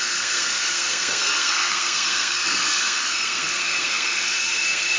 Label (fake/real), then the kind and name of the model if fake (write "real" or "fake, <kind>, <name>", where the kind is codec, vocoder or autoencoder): fake, codec, SNAC